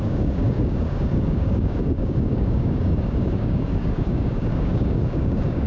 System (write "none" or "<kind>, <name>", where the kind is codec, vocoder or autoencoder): codec, DAC